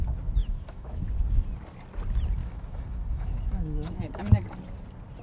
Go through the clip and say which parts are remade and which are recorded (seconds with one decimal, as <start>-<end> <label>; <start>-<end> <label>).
0.0-0.4 recorded; 0.4-1.0 remade; 1.0-2.4 recorded; 2.4-4.0 remade; 4.0-5.2 recorded